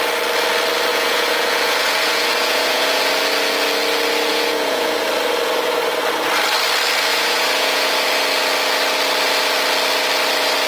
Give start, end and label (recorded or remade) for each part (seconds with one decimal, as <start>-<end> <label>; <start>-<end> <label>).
0.0-0.9 recorded; 0.9-3.0 remade; 3.0-4.3 recorded; 4.3-5.0 remade; 5.0-7.1 recorded; 7.1-7.9 remade; 7.9-10.7 recorded